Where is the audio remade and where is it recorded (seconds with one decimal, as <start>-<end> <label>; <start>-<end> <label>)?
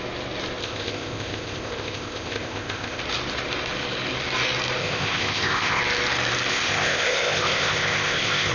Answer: 0.0-0.6 recorded; 0.6-3.0 remade; 3.0-4.8 recorded; 4.8-5.8 remade; 5.8-6.5 recorded; 6.5-8.5 remade